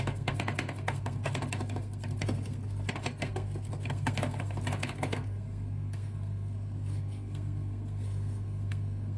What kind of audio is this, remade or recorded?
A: remade